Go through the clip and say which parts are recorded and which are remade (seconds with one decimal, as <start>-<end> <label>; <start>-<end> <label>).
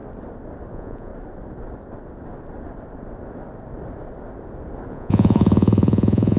0.0-0.7 recorded; 0.7-1.1 remade; 1.1-4.9 recorded; 4.9-6.4 remade